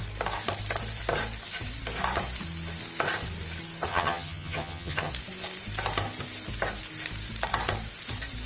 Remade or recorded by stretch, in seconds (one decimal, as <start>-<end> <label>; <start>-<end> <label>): 0.0-3.9 recorded; 3.9-5.1 remade; 5.1-8.5 recorded